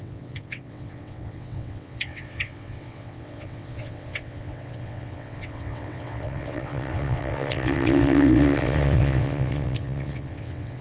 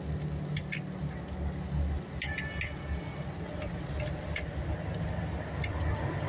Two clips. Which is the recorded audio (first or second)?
second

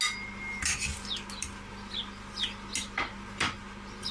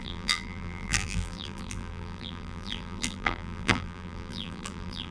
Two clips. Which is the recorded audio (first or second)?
first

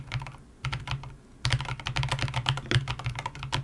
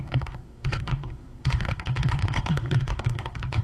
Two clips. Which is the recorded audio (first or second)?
first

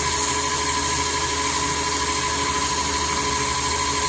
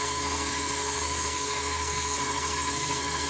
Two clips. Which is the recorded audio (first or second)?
first